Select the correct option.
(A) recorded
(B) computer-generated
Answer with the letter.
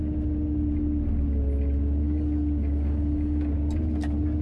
A